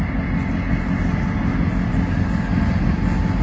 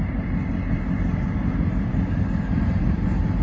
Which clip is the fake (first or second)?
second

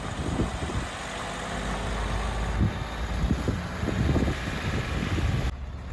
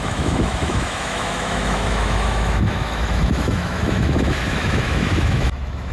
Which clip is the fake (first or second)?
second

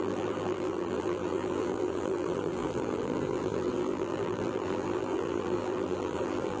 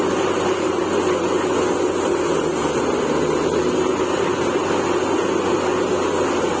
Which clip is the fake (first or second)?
first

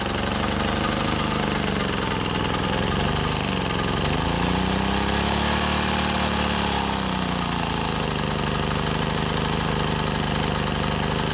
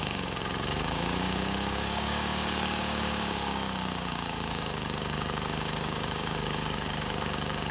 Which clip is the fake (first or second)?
second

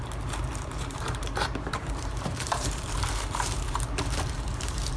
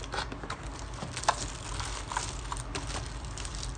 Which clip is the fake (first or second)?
first